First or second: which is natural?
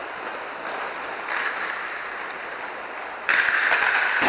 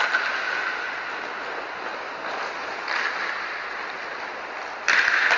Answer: second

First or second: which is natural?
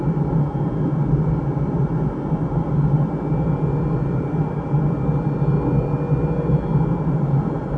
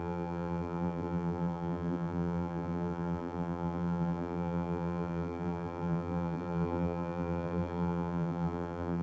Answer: first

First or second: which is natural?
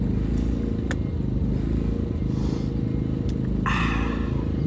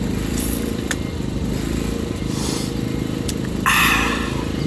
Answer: first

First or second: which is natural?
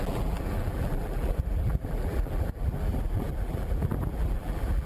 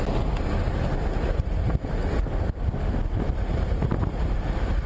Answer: second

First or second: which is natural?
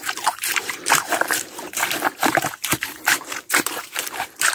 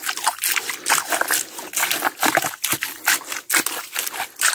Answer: second